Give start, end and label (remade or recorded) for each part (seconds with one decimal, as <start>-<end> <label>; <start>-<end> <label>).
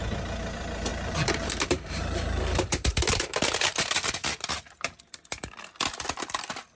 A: 0.0-0.9 recorded; 0.9-5.0 remade; 5.0-6.8 recorded